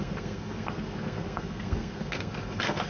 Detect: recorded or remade remade